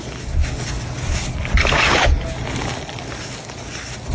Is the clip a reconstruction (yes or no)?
no